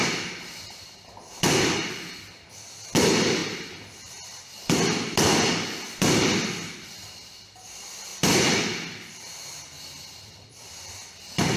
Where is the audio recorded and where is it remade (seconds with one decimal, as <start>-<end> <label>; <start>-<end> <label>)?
0.0-8.1 recorded; 8.1-9.1 remade; 9.1-11.6 recorded

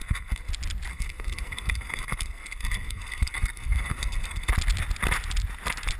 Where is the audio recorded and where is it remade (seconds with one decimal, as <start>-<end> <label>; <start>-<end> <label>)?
0.0-0.5 remade; 0.5-0.9 recorded; 0.9-4.5 remade; 4.5-6.0 recorded

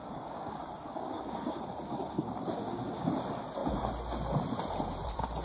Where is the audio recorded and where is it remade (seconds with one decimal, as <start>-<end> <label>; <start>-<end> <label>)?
0.0-3.2 remade; 3.2-5.4 recorded

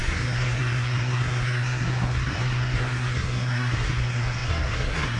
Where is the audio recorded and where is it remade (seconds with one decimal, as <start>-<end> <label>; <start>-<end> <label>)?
0.0-5.2 remade

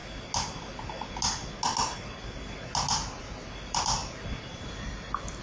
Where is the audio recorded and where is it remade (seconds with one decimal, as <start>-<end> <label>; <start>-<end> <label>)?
0.0-3.2 recorded; 3.2-5.4 remade